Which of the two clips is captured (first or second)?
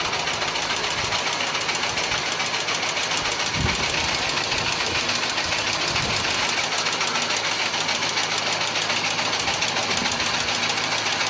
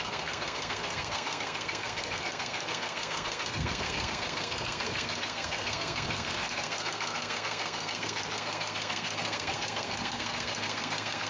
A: first